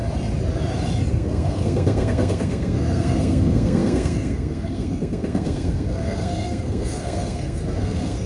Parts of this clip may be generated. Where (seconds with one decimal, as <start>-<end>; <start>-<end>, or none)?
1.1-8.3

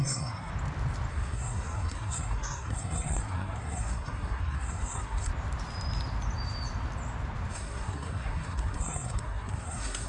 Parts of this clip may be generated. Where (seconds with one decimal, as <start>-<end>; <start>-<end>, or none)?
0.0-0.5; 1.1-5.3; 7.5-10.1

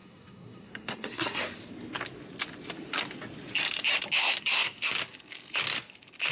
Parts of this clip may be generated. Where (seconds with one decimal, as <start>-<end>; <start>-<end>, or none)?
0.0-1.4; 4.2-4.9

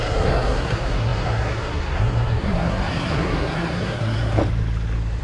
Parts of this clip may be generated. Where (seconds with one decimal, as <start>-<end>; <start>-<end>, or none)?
0.0-4.4